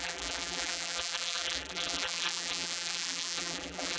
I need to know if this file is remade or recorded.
remade